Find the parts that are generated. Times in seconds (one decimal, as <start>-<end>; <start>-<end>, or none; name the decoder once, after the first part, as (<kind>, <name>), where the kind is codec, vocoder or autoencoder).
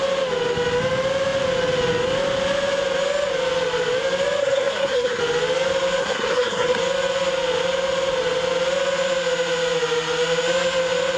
4.4-5.2 (codec, SNAC); 6.0-6.8